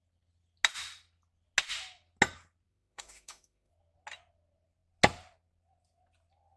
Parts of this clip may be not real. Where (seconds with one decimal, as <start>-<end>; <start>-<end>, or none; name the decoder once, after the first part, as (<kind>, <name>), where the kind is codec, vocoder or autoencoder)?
2.7-3.7 (autoencoder, DAC-VAE)